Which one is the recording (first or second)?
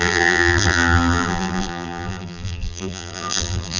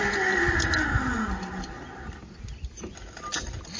second